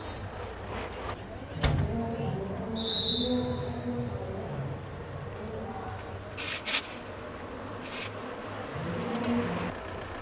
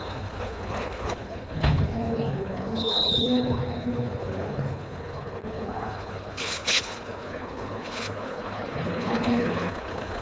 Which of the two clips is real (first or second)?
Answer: first